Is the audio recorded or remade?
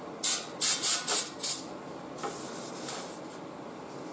recorded